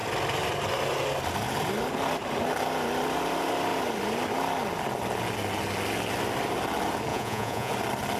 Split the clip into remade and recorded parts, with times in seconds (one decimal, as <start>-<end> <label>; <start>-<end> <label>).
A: 0.0-7.1 recorded; 7.1-7.7 remade; 7.7-8.2 recorded